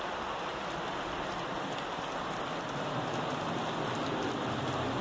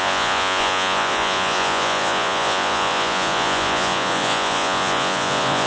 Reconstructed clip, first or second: second